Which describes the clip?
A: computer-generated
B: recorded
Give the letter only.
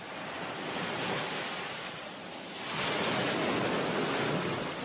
B